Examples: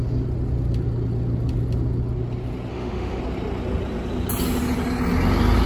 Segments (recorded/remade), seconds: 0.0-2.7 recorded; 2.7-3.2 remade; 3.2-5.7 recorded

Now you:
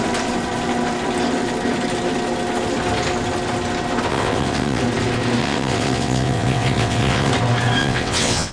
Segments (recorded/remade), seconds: 0.0-4.1 recorded; 4.1-4.8 remade; 4.8-5.4 recorded; 5.4-7.3 remade; 7.3-7.8 recorded; 7.8-8.5 remade